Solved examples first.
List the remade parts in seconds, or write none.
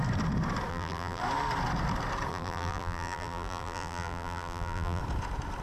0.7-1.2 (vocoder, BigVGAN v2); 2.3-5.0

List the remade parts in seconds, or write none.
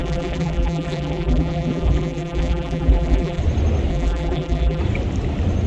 0.0-3.4 (vocoder, BigVGAN v2); 3.9-4.8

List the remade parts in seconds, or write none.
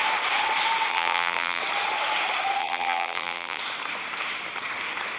0.9-1.6 (vocoder, BigVGAN v2); 2.6-3.6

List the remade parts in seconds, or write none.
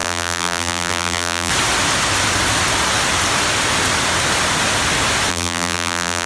0.0-1.5 (vocoder, BigVGAN v2); 5.3-6.3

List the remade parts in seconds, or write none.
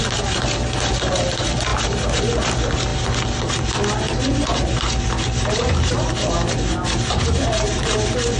none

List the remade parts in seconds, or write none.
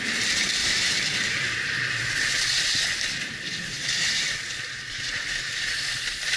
0.6-1.7 (vocoder, BigVGAN v2)